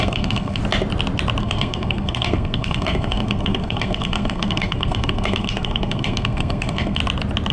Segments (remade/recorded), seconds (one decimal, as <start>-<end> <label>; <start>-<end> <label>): 0.0-0.6 remade; 0.6-1.4 recorded; 1.4-7.0 remade; 7.0-7.5 recorded